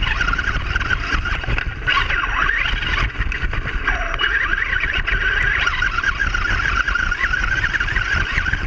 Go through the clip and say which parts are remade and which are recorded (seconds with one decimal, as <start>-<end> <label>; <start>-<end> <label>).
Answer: 0.0-8.7 recorded